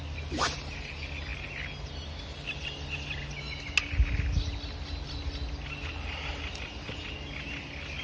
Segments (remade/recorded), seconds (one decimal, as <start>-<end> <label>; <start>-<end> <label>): 0.0-8.0 recorded